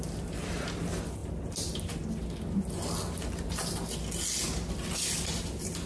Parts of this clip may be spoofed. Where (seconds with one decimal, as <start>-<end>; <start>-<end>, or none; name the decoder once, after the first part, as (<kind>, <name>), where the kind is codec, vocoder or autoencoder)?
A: 0.0-1.2 (vocoder, BigVGAN v2); 4.7-5.9